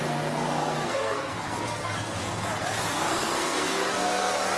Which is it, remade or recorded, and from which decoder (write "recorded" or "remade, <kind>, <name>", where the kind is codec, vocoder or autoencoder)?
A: remade, codec, SNAC